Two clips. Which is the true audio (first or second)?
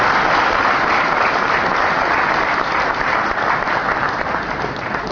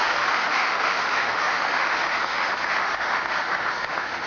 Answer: first